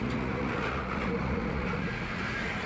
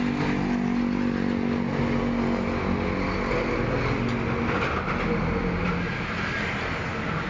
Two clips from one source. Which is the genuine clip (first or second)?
second